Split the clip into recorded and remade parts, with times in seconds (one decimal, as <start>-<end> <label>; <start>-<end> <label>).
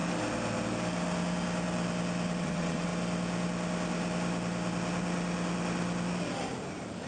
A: 0.0-2.4 recorded; 2.4-2.9 remade; 2.9-7.1 recorded